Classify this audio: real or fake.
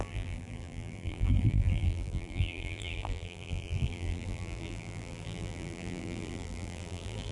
fake